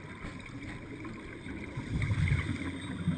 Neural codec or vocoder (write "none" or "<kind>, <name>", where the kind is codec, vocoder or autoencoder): none